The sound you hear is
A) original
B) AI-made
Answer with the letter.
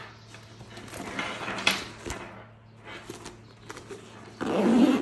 A